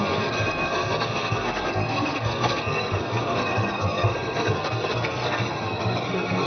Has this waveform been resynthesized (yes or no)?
yes